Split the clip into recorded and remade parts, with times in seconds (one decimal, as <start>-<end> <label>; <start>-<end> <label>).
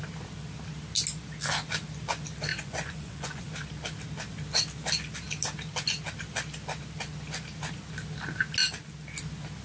0.0-2.5 recorded; 2.5-3.5 remade; 3.5-9.6 recorded